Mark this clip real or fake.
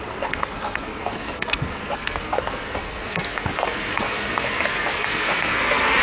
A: fake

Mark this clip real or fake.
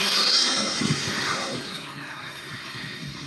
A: fake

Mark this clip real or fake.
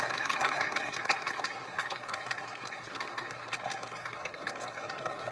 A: fake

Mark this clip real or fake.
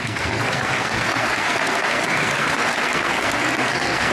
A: fake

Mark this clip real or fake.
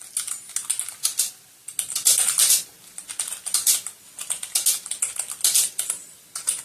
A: real